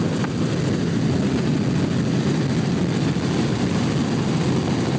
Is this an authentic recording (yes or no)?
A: yes